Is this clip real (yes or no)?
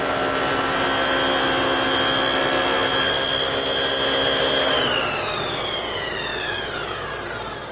yes